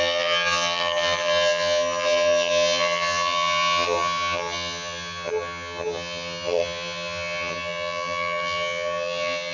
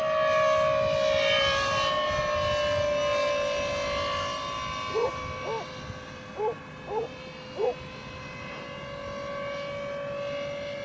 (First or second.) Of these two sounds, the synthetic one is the first